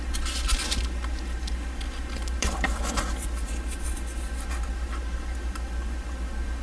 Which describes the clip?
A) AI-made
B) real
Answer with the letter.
B